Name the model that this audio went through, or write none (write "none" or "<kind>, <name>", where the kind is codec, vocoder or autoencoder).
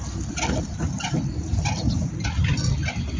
none